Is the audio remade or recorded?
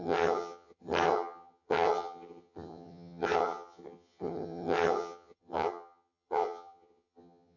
remade